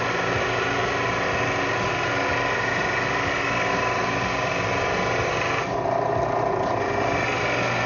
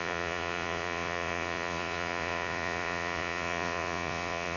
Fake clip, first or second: second